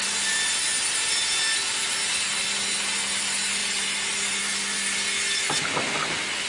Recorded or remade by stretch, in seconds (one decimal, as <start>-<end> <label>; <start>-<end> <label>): 0.0-6.5 recorded